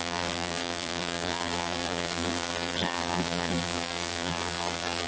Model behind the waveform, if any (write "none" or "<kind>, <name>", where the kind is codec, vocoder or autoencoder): vocoder, BigVGAN v2